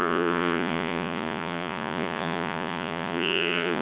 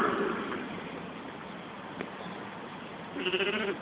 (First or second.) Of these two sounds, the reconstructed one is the first